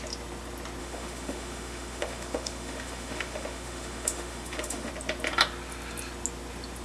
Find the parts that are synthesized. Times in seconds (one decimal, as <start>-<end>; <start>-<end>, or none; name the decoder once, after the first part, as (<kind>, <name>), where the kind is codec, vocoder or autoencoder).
0.8-4.9 (autoencoder, DAC-VAE)